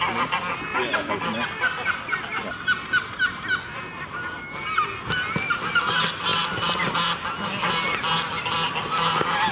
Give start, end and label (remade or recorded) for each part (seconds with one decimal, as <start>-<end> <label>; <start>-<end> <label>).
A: 0.0-9.5 recorded